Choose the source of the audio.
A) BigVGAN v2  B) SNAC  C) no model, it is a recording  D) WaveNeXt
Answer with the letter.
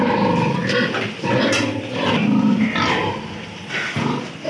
C